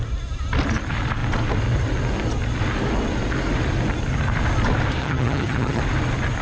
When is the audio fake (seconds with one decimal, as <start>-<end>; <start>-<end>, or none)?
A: 5.0-5.8